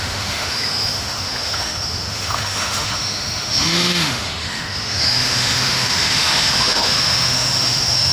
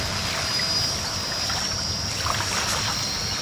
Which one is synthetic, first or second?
first